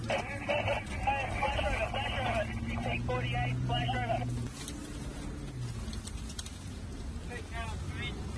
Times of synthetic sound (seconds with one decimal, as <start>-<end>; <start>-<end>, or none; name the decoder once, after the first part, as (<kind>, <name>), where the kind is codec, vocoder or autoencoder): none